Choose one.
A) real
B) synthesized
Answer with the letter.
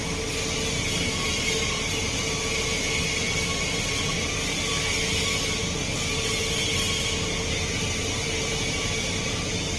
A